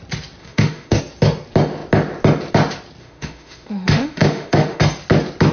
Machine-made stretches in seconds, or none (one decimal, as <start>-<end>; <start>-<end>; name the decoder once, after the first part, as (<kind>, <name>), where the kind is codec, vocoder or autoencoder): 0.4-1.0 (autoencoder, DAC-VAE); 3.0-4.8